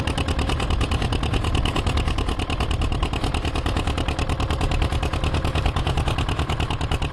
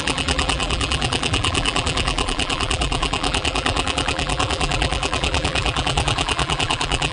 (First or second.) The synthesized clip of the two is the second